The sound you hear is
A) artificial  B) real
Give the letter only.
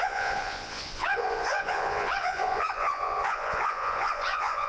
A